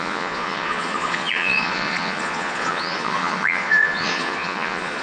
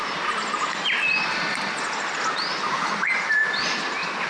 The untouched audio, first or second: second